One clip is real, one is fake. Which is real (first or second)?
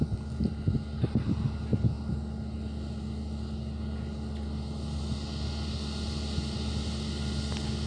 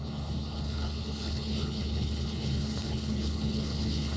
first